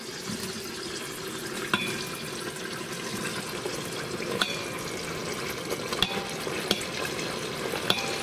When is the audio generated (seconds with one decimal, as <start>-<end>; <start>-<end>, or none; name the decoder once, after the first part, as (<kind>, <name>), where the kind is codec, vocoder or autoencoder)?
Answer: none